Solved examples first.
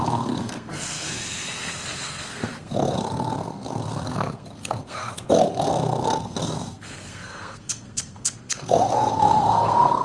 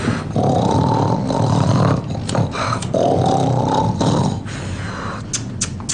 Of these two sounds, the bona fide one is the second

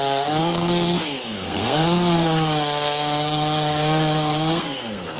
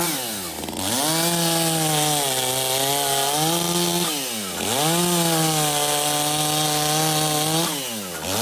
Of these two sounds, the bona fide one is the second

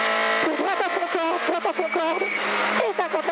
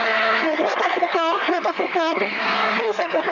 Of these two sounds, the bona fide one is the first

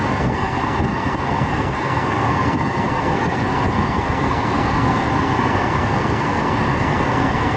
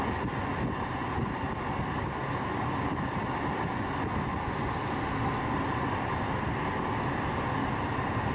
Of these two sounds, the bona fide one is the second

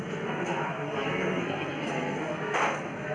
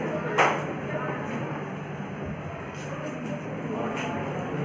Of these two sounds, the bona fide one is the second